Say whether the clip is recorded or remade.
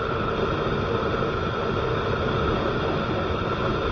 recorded